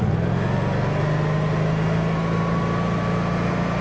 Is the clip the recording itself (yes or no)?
yes